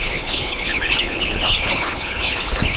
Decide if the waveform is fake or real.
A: fake